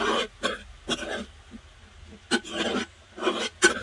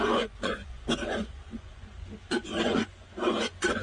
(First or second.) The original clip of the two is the first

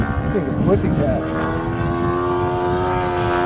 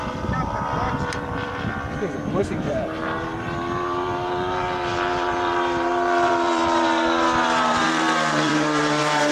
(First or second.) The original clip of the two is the first